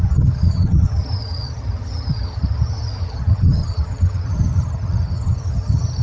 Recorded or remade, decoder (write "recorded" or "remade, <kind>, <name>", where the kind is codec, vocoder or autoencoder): remade, vocoder, HiFi-GAN